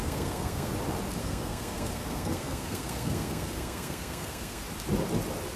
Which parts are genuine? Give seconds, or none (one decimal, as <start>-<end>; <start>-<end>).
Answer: 0.7-1.2; 4.6-5.6